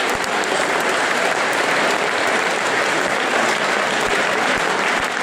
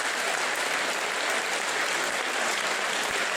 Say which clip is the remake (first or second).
first